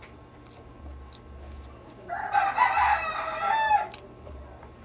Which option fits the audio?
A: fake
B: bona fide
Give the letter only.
B